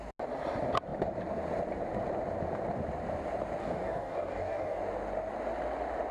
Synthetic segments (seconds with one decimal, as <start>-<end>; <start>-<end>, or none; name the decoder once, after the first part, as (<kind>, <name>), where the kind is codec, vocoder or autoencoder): 3.6-4.8 (codec, DAC)